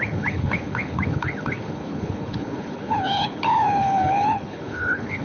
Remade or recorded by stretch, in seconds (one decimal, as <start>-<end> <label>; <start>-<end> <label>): 0.0-5.2 remade